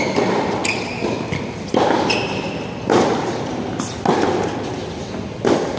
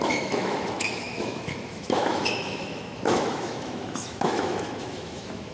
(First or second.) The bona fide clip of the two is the first